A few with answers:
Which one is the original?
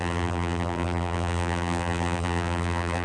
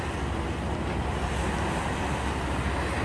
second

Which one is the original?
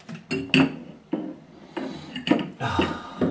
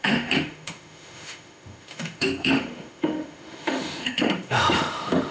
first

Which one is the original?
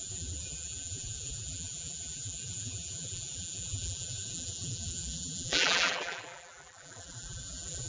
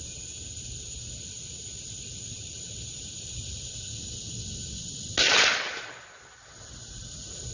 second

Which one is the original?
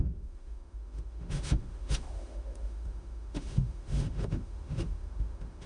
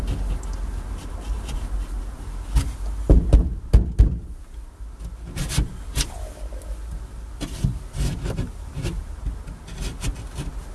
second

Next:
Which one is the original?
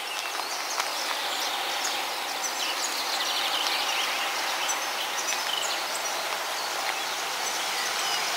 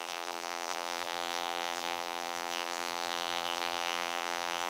first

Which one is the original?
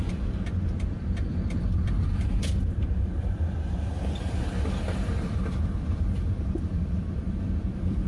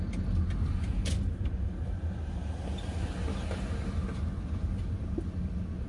second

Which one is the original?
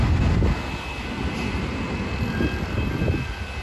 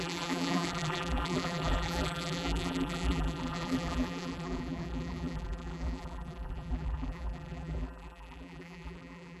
first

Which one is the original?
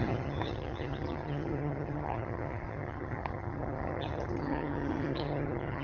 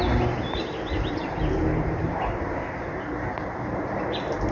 second